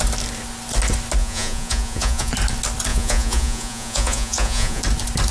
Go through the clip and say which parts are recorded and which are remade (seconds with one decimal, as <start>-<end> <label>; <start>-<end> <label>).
0.0-1.2 recorded; 1.2-2.3 remade; 2.3-2.9 recorded; 2.9-4.8 remade; 4.8-5.3 recorded